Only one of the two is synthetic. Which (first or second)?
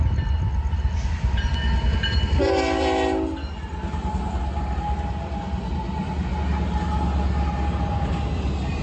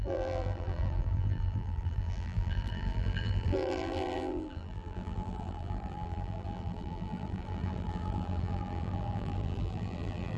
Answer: second